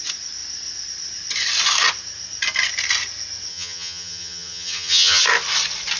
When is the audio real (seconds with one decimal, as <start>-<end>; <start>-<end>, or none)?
0.0-3.5; 5.2-6.0